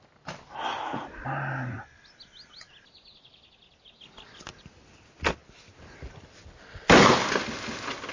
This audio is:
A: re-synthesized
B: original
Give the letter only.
B